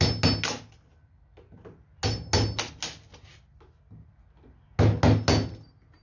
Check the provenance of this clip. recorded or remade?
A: recorded